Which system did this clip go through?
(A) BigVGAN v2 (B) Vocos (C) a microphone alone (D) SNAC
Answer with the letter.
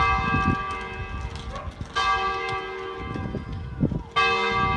C